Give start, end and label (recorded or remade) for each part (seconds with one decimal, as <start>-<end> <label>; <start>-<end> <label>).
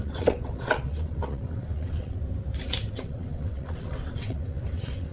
0.0-2.3 remade; 2.3-2.9 recorded; 2.9-5.1 remade